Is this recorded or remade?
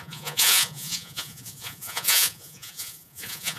remade